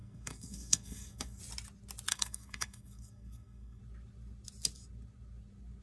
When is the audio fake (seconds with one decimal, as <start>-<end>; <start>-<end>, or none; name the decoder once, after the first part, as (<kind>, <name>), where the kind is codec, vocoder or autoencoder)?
0.0-1.4 (codec, SNAC); 2.1-3.8